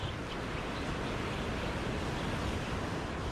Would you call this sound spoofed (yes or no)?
no